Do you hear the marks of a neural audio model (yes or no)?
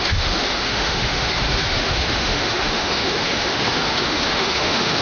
yes